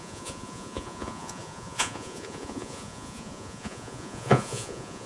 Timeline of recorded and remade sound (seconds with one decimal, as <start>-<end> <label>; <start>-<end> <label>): 0.0-5.1 remade